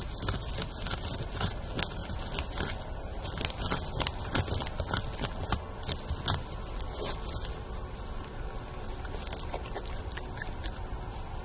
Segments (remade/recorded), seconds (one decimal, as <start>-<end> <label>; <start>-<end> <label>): 0.0-11.4 recorded